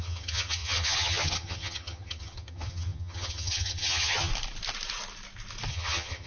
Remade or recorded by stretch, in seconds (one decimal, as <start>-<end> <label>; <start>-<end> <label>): 0.0-4.3 remade; 4.3-5.7 recorded; 5.7-6.3 remade